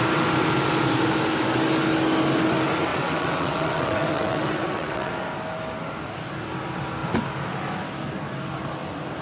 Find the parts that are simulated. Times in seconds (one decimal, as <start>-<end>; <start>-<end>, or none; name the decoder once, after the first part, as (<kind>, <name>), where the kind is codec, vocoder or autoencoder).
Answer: 2.9-5.1 (vocoder, WaveNeXt)